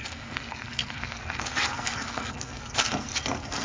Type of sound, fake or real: fake